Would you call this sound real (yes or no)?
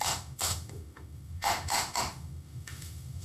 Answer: no